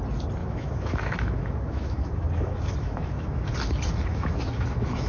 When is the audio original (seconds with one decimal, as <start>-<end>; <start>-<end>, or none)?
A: 0.0-0.4; 3.5-4.1